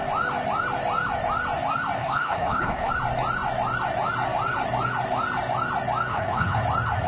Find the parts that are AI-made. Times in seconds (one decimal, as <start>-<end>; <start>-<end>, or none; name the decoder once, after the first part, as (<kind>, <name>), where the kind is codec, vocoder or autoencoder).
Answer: 2.0-2.9 (codec, HILCodec); 6.1-6.6

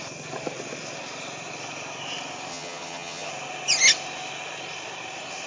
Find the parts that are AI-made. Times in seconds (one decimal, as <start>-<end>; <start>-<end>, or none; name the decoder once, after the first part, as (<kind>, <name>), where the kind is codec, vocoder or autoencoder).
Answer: 2.5-3.3 (vocoder, HiFi-GAN)

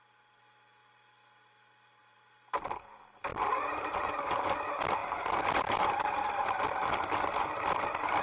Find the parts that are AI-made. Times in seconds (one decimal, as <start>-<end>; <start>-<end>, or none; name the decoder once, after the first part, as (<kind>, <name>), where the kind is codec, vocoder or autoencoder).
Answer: 2.0-2.6 (vocoder, BigVGAN v2); 3.3-4.5; 5.0-6.1

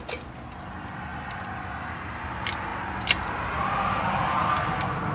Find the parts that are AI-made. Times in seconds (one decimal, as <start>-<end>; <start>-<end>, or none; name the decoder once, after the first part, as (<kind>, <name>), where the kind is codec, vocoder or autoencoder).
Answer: none

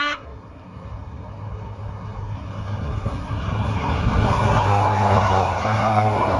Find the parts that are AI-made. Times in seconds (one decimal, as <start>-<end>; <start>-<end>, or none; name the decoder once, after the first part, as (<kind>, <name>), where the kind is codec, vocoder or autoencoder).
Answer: 0.0-6.4 (codec, SNAC)